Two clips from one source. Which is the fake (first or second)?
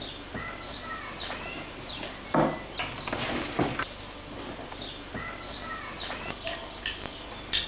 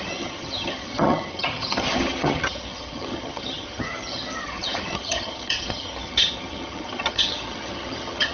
second